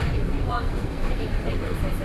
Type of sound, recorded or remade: remade